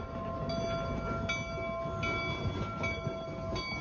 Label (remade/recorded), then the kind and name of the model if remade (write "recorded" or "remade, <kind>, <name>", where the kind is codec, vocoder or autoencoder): recorded